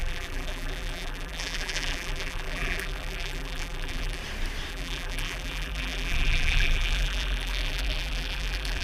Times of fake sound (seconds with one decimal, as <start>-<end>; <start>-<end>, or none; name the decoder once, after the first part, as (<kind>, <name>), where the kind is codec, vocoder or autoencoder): 0.0-4.2 (vocoder, BigVGAN v2); 4.7-8.8